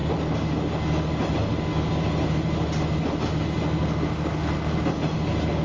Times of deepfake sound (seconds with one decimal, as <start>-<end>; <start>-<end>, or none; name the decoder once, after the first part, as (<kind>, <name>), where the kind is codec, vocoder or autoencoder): none